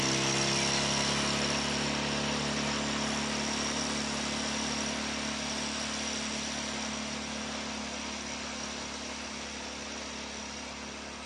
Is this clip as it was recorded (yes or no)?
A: yes